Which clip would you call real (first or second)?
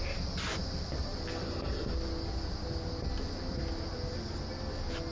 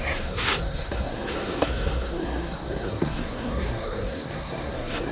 first